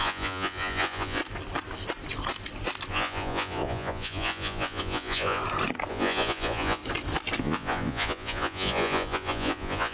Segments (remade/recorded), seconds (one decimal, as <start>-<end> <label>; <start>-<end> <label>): 0.0-1.2 remade; 1.2-2.9 recorded; 2.9-5.4 remade; 5.4-5.9 recorded; 5.9-6.8 remade; 6.8-7.4 recorded; 7.4-9.9 remade